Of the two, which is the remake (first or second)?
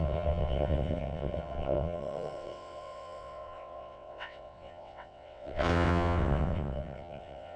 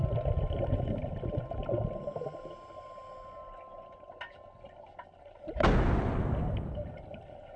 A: first